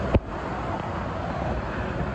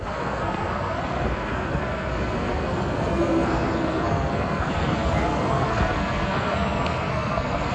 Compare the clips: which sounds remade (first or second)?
second